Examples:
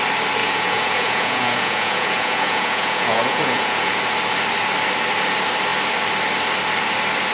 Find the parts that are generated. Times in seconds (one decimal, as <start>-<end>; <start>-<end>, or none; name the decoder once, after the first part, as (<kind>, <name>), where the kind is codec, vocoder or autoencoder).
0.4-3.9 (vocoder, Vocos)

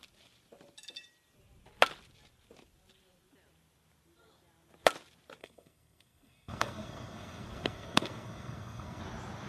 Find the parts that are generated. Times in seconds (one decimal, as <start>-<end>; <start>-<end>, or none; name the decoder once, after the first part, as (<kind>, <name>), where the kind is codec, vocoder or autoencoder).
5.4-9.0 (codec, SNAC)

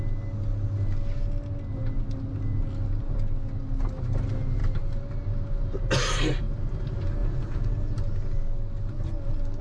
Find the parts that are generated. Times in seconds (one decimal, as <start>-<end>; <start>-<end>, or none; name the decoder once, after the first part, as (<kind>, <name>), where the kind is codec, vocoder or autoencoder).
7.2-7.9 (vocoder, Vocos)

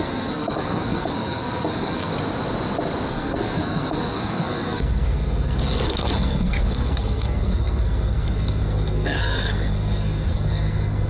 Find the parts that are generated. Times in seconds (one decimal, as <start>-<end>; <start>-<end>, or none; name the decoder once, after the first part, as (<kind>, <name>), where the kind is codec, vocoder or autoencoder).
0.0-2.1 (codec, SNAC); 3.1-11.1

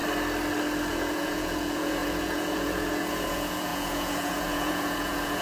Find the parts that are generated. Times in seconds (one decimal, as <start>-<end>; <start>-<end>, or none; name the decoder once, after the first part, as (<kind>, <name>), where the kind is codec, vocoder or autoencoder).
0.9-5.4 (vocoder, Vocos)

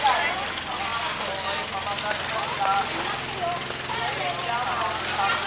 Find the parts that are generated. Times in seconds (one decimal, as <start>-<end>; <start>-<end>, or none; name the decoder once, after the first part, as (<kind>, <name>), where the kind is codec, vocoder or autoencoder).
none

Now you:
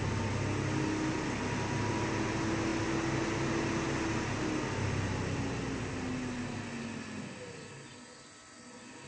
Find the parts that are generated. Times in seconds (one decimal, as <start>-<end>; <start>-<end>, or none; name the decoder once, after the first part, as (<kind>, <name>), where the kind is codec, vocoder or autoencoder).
none

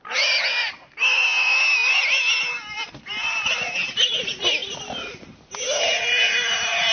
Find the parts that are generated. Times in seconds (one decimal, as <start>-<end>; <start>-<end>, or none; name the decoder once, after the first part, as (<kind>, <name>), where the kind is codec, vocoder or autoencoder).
none